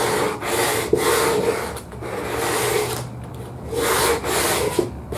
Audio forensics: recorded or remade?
recorded